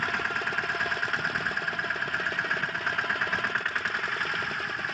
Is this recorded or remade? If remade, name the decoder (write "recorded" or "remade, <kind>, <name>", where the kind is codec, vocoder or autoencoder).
recorded